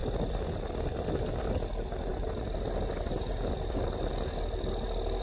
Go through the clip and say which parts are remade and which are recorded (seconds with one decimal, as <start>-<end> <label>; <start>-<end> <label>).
0.0-5.2 recorded